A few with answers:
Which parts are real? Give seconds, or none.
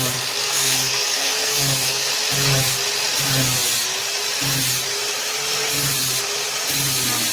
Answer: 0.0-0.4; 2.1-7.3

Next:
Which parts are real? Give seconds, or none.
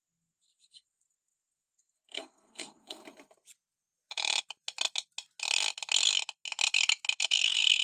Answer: 3.0-7.2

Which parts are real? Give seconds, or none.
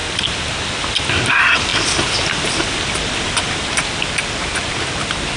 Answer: 0.0-5.4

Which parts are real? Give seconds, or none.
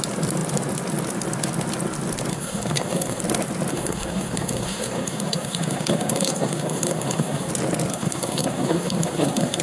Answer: 0.0-2.3; 3.2-3.7; 7.5-7.9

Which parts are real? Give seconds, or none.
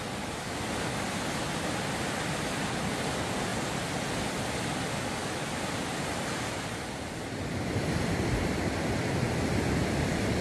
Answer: 0.0-5.2; 8.3-10.4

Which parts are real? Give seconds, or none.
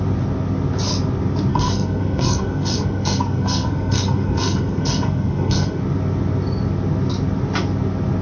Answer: 0.0-1.5; 5.8-8.2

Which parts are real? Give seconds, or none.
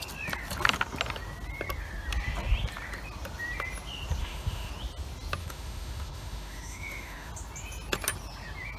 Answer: 0.0-4.2; 4.7-5.4; 7.3-8.8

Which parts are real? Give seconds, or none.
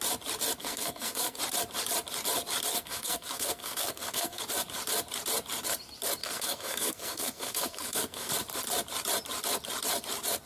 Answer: 0.0-0.6; 1.4-2.7; 4.4-6.2; 8.3-10.5